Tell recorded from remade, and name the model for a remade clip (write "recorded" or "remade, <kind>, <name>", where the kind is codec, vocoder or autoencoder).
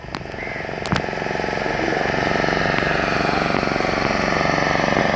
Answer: recorded